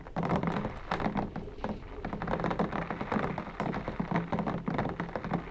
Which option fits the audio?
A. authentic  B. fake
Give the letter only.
A